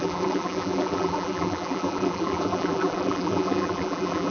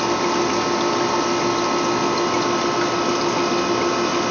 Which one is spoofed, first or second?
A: first